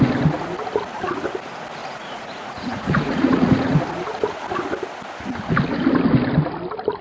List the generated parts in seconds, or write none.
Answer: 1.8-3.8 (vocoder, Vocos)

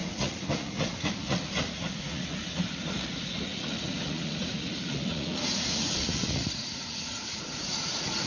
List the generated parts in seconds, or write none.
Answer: 0.0-8.3 (vocoder, Vocos)

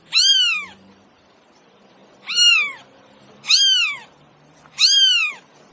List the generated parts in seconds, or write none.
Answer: 0.0-5.7 (vocoder, BigVGAN v2)

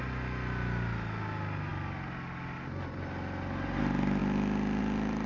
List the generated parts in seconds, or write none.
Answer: none

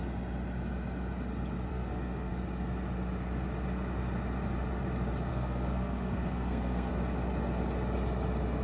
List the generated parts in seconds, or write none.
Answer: 1.7-2.3 (codec, SNAC); 5.3-6.9

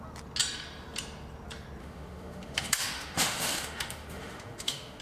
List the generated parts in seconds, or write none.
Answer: 1.8-5.0 (autoencoder, DAC-VAE)

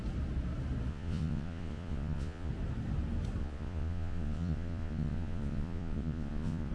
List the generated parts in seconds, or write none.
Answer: 0.9-2.5 (vocoder, Vocos); 3.4-6.7